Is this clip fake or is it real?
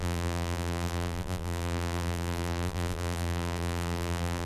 fake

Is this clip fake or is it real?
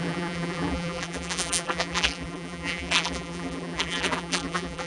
fake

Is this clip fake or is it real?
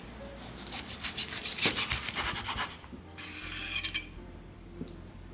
fake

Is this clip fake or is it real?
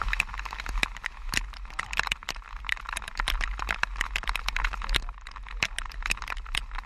real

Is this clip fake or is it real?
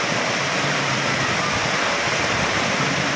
fake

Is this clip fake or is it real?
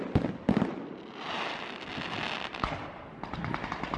real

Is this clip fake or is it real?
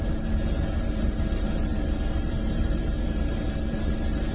fake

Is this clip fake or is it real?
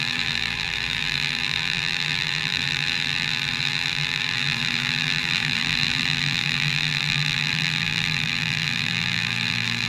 fake